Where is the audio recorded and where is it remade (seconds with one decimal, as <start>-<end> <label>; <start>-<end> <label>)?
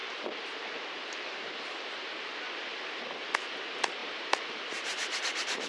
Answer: 0.0-2.1 remade; 2.1-4.0 recorded; 4.0-5.7 remade